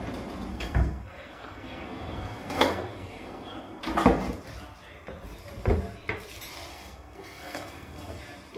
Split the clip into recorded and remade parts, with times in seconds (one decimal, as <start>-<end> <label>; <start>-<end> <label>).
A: 0.0-0.5 recorded; 0.5-3.8 remade; 3.8-6.7 recorded; 6.7-8.2 remade; 8.2-8.6 recorded